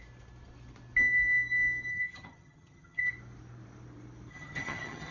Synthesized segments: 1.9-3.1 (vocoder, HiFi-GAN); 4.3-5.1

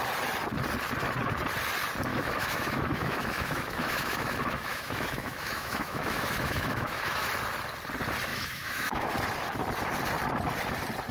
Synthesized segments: 2.1-7.3 (autoencoder, DAC-VAE); 8.3-9.1

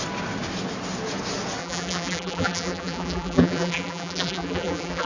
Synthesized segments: 1.6-5.1 (vocoder, BigVGAN v2)

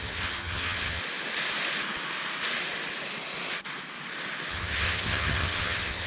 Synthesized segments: 0.0-1.0 (vocoder, HiFi-GAN); 4.5-6.1

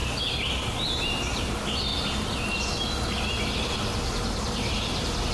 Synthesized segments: 1.2-1.9 (vocoder, BigVGAN v2)